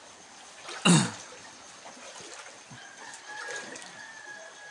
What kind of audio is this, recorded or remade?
recorded